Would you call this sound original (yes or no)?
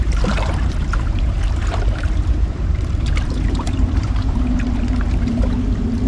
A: no